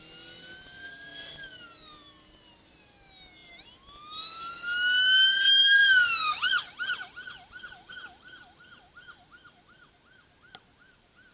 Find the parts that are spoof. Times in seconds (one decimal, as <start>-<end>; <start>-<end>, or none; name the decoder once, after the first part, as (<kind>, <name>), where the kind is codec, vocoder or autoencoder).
1.1-2.8 (vocoder, BigVGAN v2)